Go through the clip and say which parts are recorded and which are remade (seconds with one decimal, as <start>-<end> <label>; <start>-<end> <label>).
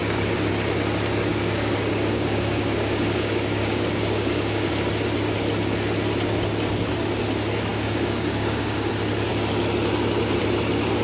0.0-0.5 remade; 0.5-1.3 recorded; 1.3-4.7 remade; 4.7-7.7 recorded; 7.7-8.9 remade; 8.9-11.0 recorded